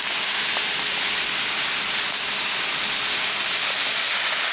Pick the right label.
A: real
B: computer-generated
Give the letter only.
A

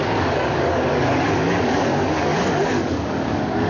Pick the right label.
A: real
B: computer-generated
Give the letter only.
B